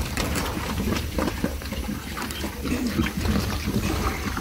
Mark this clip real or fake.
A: fake